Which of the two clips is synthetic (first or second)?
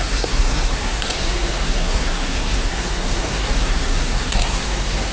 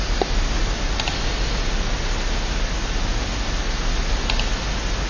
first